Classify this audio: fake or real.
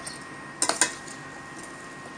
real